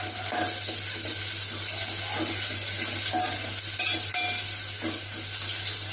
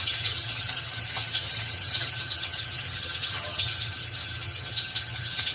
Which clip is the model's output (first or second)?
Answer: second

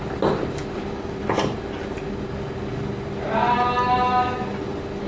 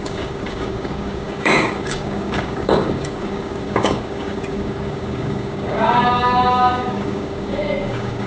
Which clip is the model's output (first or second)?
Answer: second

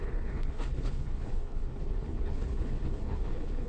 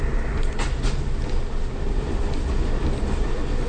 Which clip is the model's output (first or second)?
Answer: first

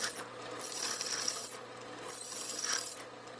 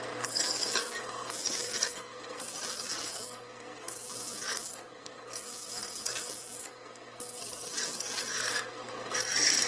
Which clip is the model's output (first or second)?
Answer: second